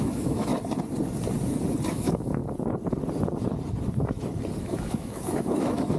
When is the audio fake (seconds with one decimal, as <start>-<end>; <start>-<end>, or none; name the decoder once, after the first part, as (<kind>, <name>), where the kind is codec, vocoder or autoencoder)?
0.0-0.5 (autoencoder, DAC-VAE); 1.9-2.4; 4.6-6.0